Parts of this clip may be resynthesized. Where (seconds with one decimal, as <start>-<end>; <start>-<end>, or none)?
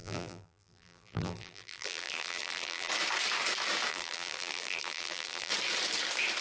0.0-2.9; 3.9-5.5